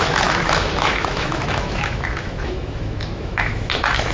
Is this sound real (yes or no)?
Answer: no